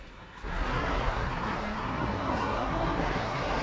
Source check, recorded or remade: remade